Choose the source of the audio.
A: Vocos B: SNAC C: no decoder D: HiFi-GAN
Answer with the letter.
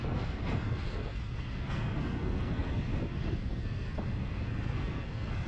B